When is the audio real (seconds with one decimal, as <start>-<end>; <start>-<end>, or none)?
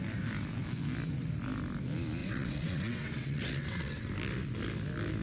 0.0-2.2; 4.1-5.2